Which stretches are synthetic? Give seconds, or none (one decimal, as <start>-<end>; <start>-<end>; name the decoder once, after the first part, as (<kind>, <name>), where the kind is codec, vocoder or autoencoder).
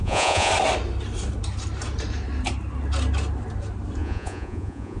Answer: 0.0-0.5 (vocoder, Vocos); 4.0-5.0